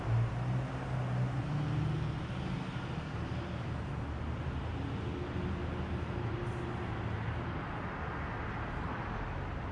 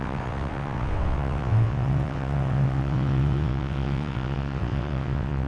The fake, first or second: second